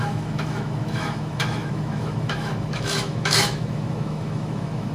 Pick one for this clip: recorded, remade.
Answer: remade